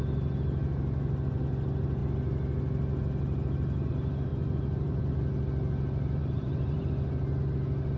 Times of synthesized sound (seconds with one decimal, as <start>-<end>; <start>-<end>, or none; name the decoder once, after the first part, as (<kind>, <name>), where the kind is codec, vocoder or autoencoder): 4.3-5.0 (vocoder, BigVGAN v2); 6.2-6.9